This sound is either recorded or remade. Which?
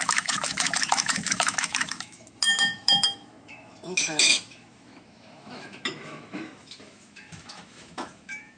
remade